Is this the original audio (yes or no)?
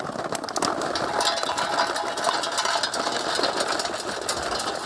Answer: yes